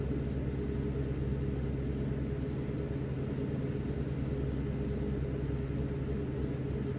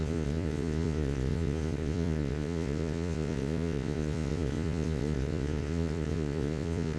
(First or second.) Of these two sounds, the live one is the first